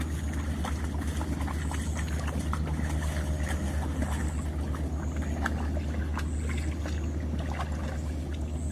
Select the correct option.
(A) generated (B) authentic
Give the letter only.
B